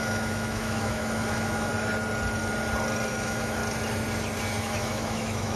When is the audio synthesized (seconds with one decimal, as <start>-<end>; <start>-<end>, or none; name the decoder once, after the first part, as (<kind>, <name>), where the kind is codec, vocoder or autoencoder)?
0.0-1.7 (autoencoder, DAC-VAE); 3.1-3.6; 4.6-5.6